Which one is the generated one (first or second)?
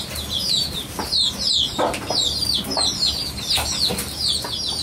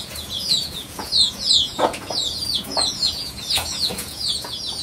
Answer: second